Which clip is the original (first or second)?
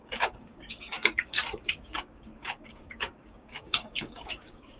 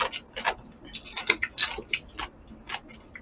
second